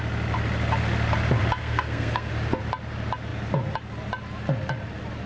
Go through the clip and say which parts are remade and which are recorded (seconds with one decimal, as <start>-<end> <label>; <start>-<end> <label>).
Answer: 0.0-1.6 recorded; 1.6-2.3 remade; 2.3-5.3 recorded